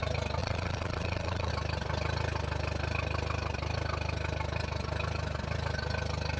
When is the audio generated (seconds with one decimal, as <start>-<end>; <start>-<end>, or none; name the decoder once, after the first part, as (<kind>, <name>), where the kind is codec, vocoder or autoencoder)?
0.4-1.5 (vocoder, Vocos)